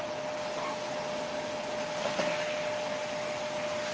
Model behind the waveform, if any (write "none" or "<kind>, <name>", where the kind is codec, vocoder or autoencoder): none